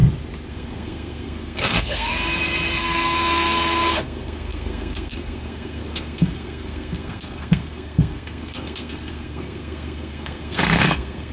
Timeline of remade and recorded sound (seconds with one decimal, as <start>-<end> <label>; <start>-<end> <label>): 0.0-0.5 recorded; 0.5-2.1 remade; 2.1-2.8 recorded; 2.8-11.3 remade